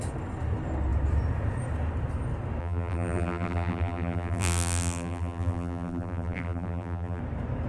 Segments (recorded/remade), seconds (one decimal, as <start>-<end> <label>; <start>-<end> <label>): 0.0-2.6 recorded; 2.6-7.2 remade; 7.2-7.7 recorded